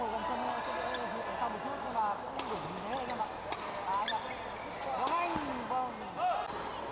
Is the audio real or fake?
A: real